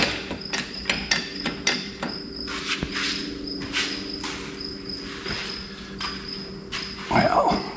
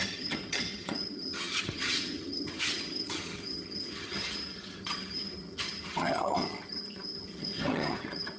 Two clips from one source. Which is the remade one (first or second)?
second